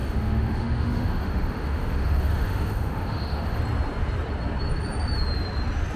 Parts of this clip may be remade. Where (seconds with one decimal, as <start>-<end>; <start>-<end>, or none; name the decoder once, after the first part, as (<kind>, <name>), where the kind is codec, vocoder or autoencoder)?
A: 0.0-3.6 (autoencoder, DAC-VAE)